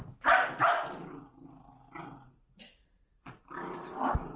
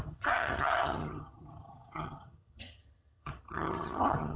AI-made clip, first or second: second